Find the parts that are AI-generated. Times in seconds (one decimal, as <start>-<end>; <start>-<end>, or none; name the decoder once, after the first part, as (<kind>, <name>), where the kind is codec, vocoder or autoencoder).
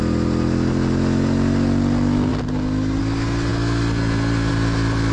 none